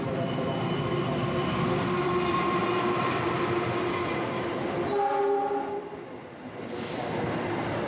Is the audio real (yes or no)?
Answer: yes